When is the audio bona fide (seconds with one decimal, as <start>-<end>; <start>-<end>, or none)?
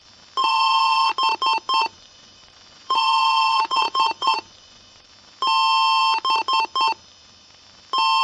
0.0-0.4; 1.1-1.8; 5.0-8.2